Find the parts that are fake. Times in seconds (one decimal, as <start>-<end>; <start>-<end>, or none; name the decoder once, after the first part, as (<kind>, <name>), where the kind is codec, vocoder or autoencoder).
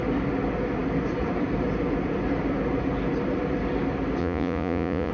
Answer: 4.2-5.1 (vocoder, Vocos)